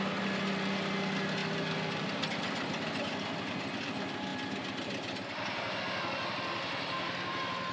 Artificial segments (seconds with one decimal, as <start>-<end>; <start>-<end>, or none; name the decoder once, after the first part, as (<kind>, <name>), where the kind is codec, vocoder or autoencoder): none